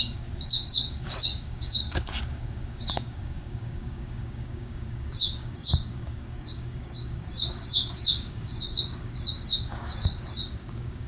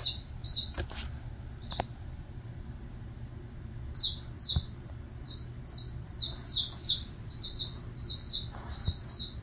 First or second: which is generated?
first